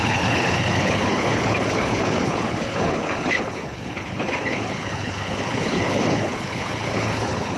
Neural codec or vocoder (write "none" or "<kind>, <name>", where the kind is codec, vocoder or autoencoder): codec, HILCodec